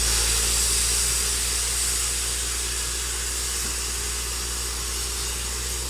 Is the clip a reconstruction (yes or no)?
no